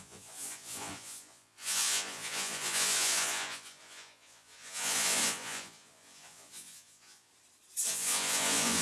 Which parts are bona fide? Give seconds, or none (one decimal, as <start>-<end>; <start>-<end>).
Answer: 7.3-7.9